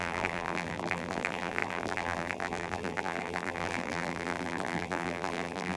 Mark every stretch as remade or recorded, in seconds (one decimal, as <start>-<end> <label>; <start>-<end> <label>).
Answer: 0.0-5.8 remade